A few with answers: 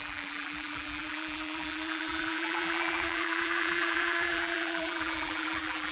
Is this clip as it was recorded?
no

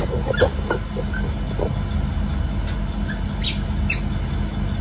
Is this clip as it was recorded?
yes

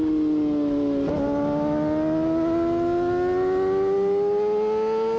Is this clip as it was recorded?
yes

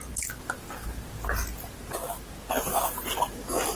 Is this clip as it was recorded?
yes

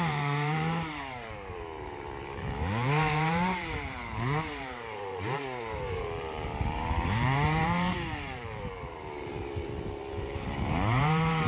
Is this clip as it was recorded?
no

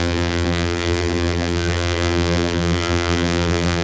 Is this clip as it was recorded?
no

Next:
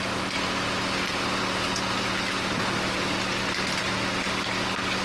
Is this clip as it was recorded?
yes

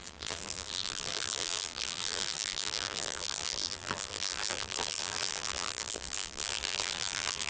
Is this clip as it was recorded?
no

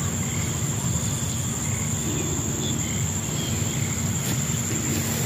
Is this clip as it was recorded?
yes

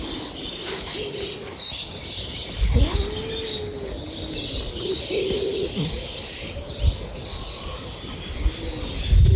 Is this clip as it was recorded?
yes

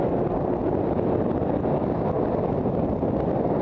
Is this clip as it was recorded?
yes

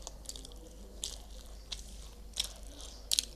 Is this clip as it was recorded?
yes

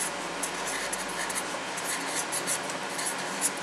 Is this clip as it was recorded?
yes